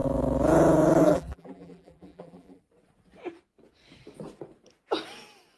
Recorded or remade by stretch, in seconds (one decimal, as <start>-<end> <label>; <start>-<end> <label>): 0.0-1.0 recorded; 1.0-2.6 remade; 2.6-5.6 recorded